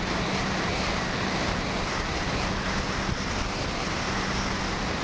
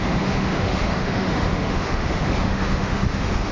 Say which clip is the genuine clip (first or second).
first